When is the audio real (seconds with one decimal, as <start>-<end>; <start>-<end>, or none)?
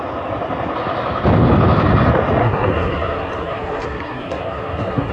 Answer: 0.0-2.4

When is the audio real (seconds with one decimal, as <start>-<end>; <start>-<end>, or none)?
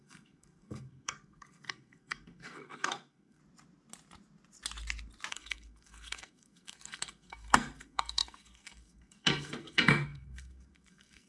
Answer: 3.4-5.3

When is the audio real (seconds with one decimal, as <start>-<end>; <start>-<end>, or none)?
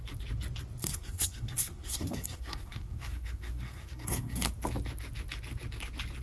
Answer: 0.0-0.8; 4.5-6.2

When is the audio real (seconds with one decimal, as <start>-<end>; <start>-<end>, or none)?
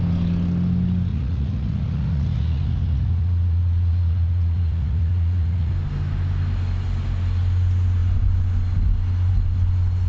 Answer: 0.0-1.1; 5.7-10.1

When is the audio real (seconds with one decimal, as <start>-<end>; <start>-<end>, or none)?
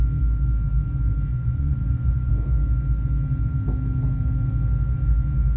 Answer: 0.0-1.3; 2.3-5.6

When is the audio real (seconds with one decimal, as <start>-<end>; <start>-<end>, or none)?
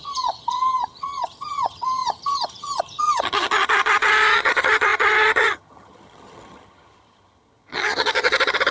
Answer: none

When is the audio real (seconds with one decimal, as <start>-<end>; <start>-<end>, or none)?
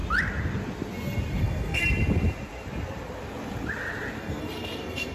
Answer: 0.0-1.4; 1.8-4.2